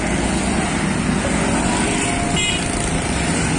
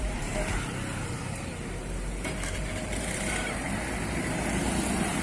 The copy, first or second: second